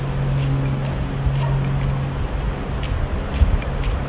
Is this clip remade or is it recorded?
recorded